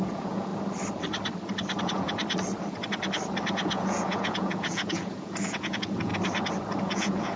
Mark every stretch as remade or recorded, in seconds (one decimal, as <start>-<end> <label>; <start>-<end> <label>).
0.0-0.5 remade; 0.5-1.8 recorded; 1.8-2.2 remade; 2.2-3.5 recorded; 3.5-6.1 remade; 6.1-6.8 recorded; 6.8-7.4 remade